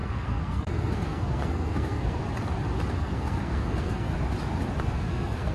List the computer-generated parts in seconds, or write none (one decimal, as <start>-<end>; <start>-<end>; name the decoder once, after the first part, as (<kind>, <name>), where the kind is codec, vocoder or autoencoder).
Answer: 0.0-2.2 (codec, SNAC); 2.9-4.1; 4.8-5.5